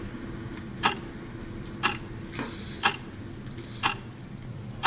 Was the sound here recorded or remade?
recorded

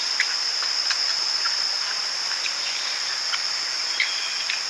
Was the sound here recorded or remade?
recorded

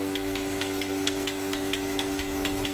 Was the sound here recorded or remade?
remade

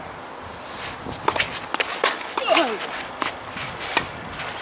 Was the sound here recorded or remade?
recorded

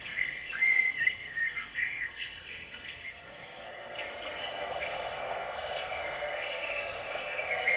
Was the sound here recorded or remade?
remade